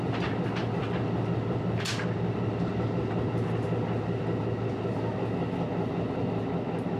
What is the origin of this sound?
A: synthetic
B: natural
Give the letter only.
B